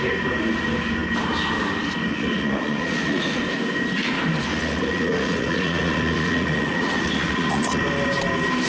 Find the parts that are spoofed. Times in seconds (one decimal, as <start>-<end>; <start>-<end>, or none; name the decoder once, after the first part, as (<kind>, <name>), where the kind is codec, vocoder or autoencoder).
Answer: 2.1-3.4 (vocoder, Vocos); 4.5-7.8